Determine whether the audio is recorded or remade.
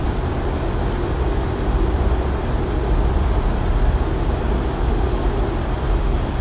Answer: recorded